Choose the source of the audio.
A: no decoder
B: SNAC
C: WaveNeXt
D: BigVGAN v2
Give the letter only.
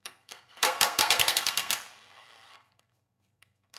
B